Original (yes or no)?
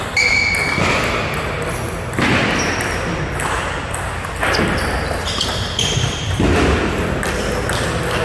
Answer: yes